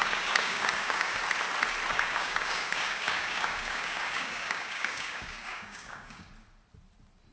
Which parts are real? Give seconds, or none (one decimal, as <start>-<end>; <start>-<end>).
1.2-1.9; 6.3-7.3